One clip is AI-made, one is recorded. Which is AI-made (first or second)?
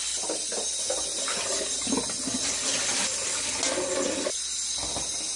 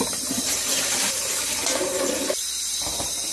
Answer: second